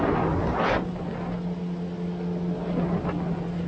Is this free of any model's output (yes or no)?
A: yes